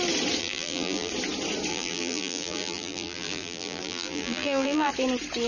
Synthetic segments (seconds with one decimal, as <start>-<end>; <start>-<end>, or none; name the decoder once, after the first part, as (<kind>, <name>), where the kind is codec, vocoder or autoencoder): 0.4-1.1 (vocoder, BigVGAN v2); 1.7-4.9